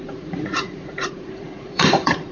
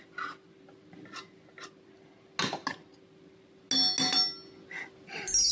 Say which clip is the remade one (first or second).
first